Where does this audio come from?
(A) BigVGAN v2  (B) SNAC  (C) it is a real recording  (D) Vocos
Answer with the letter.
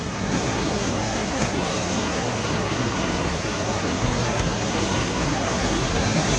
B